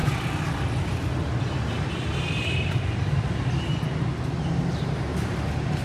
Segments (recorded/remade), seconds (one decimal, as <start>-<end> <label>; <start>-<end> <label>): 0.0-3.5 remade; 3.5-5.1 recorded; 5.1-5.8 remade